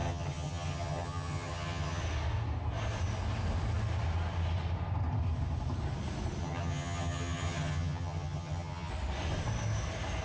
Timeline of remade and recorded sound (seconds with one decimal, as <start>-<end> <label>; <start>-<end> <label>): 0.0-2.0 remade; 2.0-6.4 recorded; 6.4-8.9 remade; 8.9-10.2 recorded